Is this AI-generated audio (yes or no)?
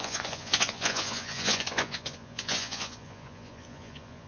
yes